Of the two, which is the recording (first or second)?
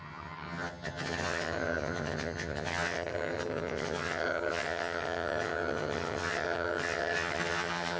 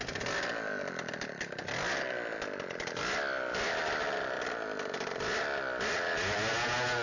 second